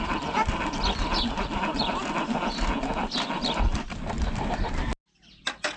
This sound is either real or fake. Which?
real